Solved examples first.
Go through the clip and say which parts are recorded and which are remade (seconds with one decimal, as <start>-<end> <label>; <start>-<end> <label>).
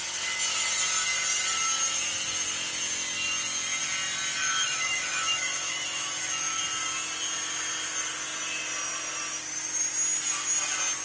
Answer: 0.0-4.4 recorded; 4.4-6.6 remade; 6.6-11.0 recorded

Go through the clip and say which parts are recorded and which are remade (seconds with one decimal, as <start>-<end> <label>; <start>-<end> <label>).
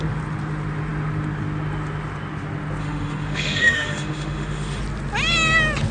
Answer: 0.0-2.8 recorded; 2.8-4.8 remade; 4.8-5.9 recorded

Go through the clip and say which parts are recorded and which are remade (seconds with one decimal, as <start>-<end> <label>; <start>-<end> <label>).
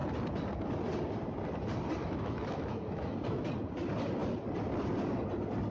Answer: 0.0-2.0 recorded; 2.0-3.5 remade; 3.5-5.7 recorded